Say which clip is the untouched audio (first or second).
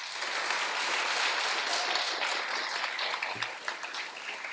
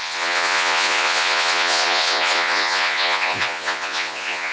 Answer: first